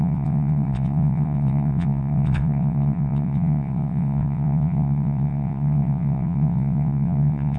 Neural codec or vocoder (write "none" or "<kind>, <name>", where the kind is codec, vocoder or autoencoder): vocoder, WaveNeXt